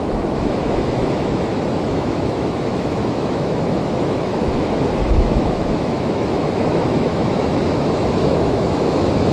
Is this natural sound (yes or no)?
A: no